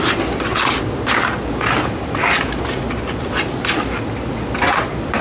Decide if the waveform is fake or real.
real